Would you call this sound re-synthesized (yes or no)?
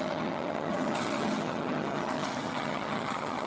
yes